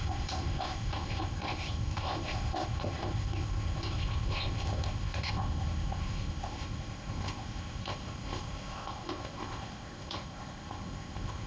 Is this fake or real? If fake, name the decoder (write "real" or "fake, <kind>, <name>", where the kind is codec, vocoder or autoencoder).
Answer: fake, codec, ZipCodec